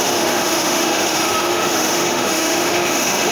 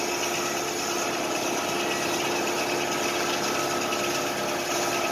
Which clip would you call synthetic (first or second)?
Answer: first